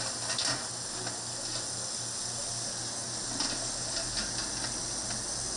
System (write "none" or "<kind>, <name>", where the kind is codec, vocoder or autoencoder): none